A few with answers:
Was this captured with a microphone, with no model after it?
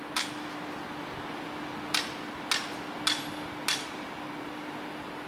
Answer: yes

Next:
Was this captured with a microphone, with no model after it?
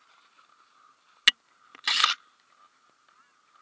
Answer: yes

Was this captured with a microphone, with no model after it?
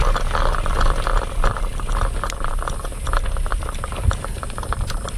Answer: yes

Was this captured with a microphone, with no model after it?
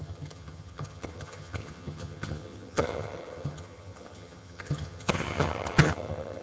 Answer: no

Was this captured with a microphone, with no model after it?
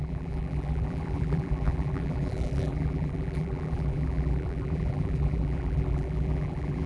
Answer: no